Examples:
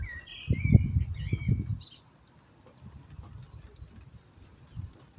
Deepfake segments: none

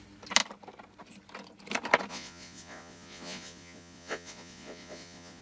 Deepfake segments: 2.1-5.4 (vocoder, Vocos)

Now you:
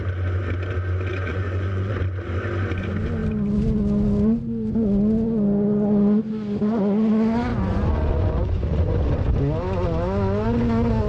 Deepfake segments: 1.1-2.0 (vocoder, Vocos); 7.5-9.4